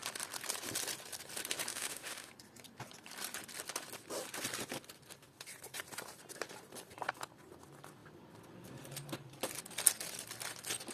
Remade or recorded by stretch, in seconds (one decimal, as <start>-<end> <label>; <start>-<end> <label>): 0.0-1.7 recorded; 1.7-2.3 remade; 2.3-10.9 recorded